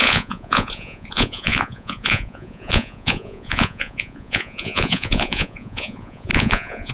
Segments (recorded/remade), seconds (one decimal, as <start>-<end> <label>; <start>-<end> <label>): 0.0-6.9 remade